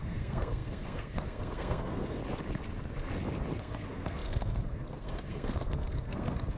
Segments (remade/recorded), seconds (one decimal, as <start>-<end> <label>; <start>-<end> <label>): 0.0-2.2 remade; 2.2-3.6 recorded; 3.6-6.6 remade